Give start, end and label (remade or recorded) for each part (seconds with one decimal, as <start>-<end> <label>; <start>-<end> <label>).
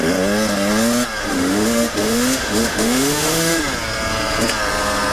0.0-1.2 recorded; 1.2-3.6 remade; 3.6-5.1 recorded